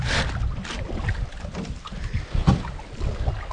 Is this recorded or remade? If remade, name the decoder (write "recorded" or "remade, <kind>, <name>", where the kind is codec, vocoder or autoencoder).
recorded